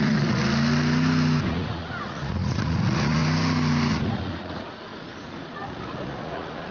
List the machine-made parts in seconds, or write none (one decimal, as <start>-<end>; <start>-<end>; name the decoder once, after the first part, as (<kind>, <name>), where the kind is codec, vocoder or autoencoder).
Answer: 0.0-0.4 (vocoder, Vocos); 1.5-3.2; 3.9-6.7